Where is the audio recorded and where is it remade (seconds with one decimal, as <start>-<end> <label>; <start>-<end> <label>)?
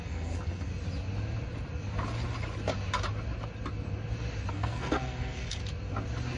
0.0-0.7 remade; 0.7-4.5 recorded; 4.5-5.6 remade; 5.6-6.4 recorded